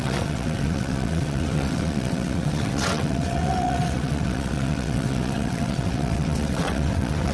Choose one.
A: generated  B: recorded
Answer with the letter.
A